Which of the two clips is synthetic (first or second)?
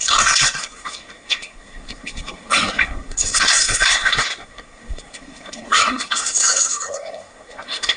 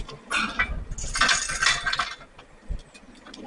first